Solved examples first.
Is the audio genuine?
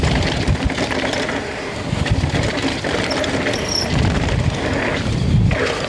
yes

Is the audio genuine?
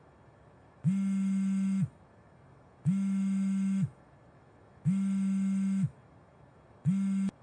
no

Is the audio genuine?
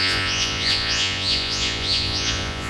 no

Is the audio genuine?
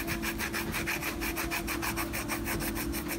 yes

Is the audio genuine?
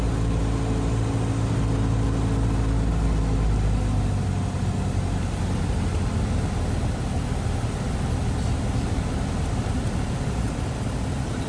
yes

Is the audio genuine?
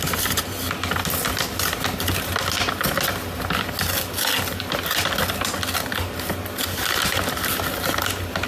yes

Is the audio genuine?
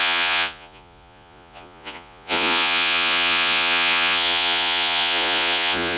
no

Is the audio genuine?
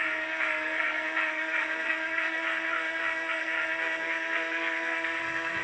no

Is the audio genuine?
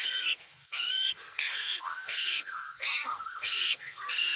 no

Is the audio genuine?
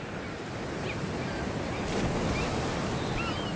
yes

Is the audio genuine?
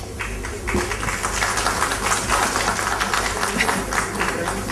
yes